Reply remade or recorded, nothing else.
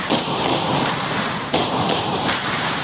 remade